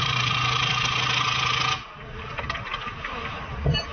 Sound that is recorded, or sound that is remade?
recorded